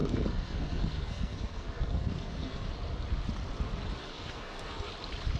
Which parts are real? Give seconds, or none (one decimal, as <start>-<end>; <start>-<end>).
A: 2.7-4.0; 4.9-5.4